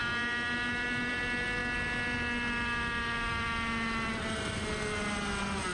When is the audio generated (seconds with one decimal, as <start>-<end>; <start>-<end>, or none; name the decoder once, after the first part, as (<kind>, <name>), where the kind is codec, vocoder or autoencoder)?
none